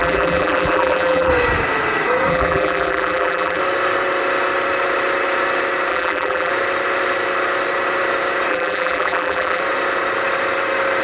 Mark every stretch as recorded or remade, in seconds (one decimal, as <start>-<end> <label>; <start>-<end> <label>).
0.0-1.3 remade; 1.3-2.3 recorded; 2.3-3.6 remade; 3.6-5.9 recorded; 5.9-6.5 remade; 6.5-8.5 recorded; 8.5-9.6 remade; 9.6-11.0 recorded